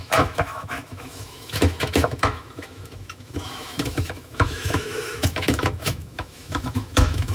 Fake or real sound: fake